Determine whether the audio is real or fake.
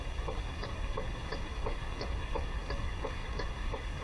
fake